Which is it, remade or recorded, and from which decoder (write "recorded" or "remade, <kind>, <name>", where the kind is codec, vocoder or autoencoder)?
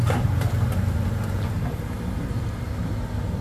remade, vocoder, BigVGAN v2